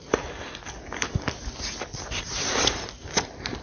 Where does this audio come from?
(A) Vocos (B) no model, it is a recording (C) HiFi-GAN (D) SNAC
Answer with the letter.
B